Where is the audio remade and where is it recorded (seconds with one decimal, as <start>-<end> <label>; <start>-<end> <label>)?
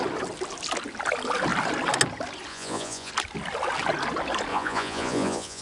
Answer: 0.0-2.5 recorded; 2.5-3.1 remade; 3.1-4.5 recorded; 4.5-5.6 remade